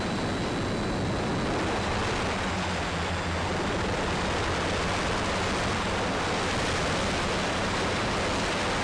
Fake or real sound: real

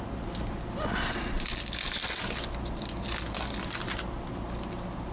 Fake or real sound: real